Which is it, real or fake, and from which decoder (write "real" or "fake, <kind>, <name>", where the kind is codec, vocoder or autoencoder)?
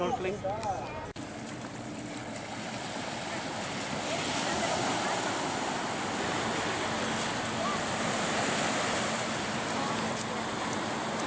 real